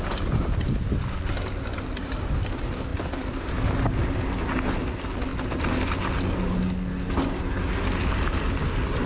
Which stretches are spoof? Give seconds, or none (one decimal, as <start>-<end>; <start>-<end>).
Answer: none